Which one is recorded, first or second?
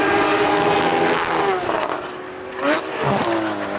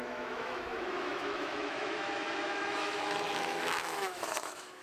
first